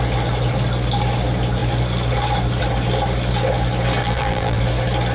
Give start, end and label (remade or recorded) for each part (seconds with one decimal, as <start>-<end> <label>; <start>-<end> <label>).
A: 0.0-4.0 recorded; 4.0-4.6 remade; 4.6-5.1 recorded